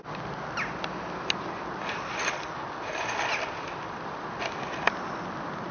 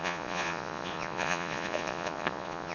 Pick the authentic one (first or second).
first